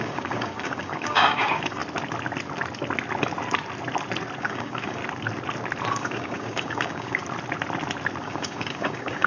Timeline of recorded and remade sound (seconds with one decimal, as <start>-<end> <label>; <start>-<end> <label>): 0.0-1.8 remade; 1.8-4.4 recorded; 4.4-5.0 remade; 5.0-5.9 recorded; 5.9-7.2 remade; 7.2-8.2 recorded; 8.2-9.3 remade